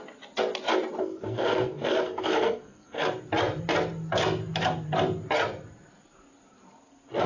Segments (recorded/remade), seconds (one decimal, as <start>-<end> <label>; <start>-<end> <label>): 0.0-1.0 recorded; 1.0-3.1 remade; 3.1-7.3 recorded